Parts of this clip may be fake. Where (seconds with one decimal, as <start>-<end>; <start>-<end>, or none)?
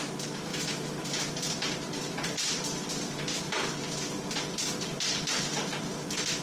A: 0.5-1.1